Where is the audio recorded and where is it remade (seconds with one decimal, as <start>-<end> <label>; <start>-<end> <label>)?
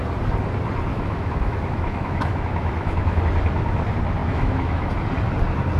0.0-0.9 recorded; 0.9-3.2 remade; 3.2-4.2 recorded; 4.2-4.9 remade; 4.9-5.8 recorded